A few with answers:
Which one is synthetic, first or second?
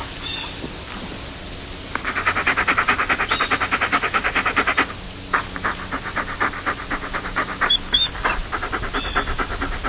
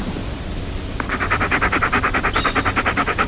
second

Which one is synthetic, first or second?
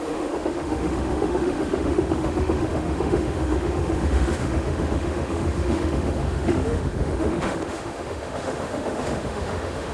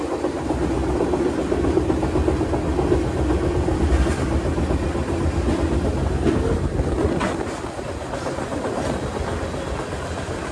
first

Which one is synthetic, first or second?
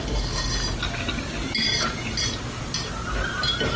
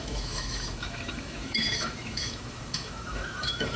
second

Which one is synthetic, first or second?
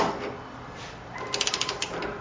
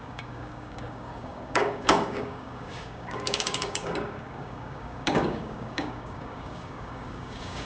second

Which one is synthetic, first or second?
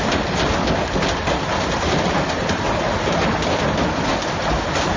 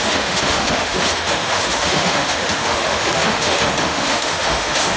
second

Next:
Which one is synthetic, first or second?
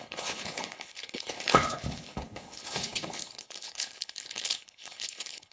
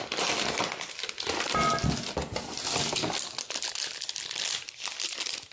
first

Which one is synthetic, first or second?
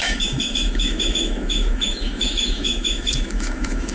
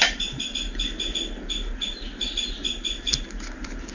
first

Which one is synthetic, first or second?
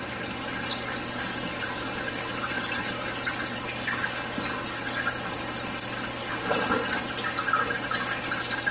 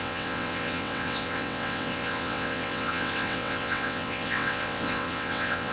second